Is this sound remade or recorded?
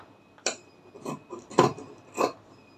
remade